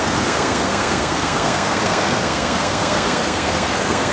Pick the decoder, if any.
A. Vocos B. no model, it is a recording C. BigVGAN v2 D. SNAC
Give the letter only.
D